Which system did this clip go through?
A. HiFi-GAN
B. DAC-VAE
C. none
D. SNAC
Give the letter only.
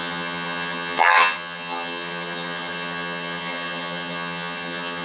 A